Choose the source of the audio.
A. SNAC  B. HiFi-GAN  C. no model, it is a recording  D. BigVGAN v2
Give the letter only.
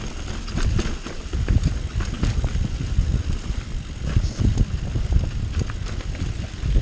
C